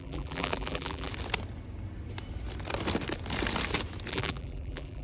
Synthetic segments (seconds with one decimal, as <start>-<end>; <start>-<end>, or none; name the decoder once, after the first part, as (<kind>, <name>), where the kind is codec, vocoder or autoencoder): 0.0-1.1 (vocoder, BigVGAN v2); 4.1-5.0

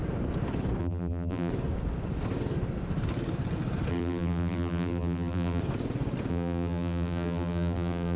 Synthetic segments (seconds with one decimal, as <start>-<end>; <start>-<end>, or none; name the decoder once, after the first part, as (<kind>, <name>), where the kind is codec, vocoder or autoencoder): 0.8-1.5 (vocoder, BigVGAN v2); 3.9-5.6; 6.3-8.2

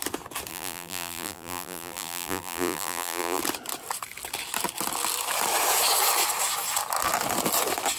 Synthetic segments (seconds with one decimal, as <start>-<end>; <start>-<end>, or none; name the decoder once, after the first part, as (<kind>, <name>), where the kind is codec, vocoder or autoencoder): 0.5-3.4 (vocoder, BigVGAN v2)

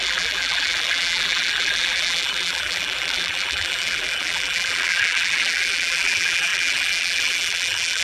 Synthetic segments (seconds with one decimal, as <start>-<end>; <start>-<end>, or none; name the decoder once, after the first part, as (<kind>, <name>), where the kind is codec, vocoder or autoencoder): 0.0-8.0 (vocoder, BigVGAN v2)

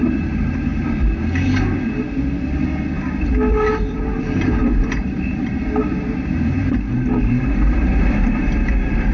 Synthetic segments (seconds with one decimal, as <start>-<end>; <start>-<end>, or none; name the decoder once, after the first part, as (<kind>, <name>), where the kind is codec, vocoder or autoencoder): 0.0-0.7 (vocoder, BigVGAN v2); 3.7-9.1